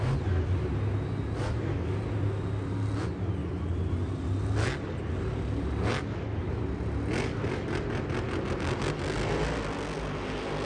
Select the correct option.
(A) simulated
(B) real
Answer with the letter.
B